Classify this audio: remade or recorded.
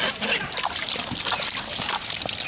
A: recorded